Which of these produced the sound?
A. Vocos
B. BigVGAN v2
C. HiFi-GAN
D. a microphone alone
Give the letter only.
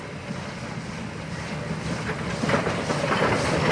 D